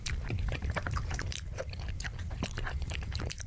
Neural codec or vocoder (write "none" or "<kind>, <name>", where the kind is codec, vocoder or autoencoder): vocoder, BigVGAN v2